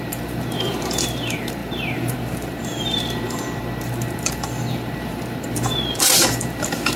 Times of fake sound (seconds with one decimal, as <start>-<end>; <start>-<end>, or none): 0.0-7.0